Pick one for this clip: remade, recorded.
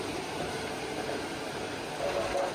recorded